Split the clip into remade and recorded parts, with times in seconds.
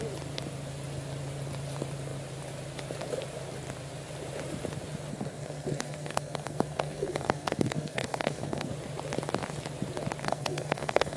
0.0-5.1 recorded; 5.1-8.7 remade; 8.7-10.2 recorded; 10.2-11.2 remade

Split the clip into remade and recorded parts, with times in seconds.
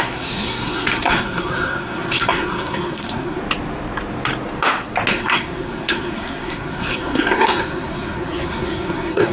0.0-3.4 remade; 3.4-5.1 recorded; 5.1-9.3 remade